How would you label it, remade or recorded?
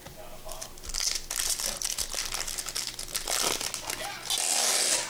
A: recorded